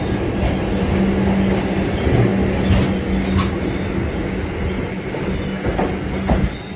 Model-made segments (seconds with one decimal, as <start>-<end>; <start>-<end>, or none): none